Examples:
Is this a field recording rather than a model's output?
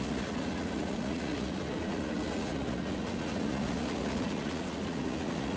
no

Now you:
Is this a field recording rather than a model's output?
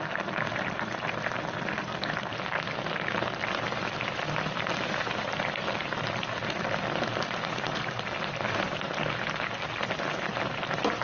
no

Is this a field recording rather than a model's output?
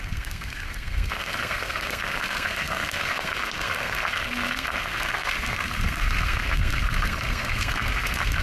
no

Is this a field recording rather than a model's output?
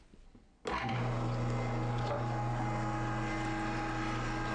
yes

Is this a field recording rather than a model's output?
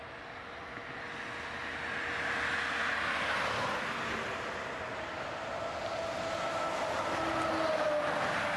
yes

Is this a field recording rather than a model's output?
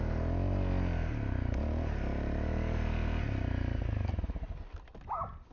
yes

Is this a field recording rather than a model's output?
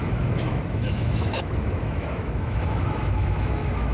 no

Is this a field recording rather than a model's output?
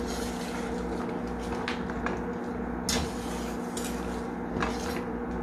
yes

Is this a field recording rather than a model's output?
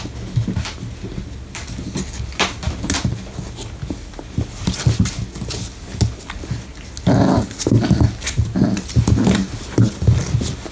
yes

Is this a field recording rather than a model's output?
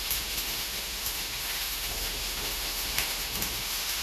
no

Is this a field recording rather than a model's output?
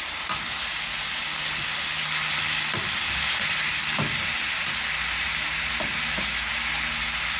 yes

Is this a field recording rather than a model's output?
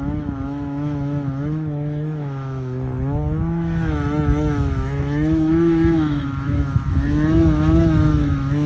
no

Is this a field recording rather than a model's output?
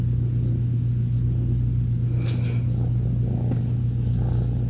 yes